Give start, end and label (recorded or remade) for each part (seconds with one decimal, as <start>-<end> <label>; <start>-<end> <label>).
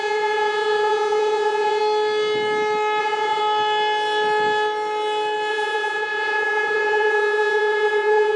0.0-1.8 remade; 1.8-3.0 recorded; 3.0-3.4 remade; 3.4-5.5 recorded; 5.5-8.4 remade